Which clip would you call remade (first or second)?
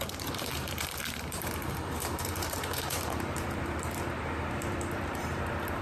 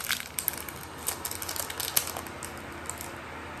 first